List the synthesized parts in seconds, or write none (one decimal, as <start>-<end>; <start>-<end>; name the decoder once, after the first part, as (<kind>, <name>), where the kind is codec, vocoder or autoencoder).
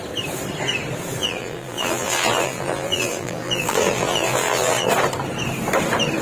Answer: 1.2-4.9 (vocoder, BigVGAN v2)